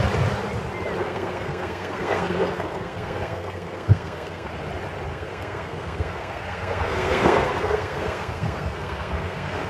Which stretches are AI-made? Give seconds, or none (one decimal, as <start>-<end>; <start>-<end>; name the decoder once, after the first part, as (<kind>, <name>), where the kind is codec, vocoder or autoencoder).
1.0-4.5 (codec, SNAC); 5.1-9.7